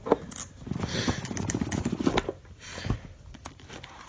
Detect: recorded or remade recorded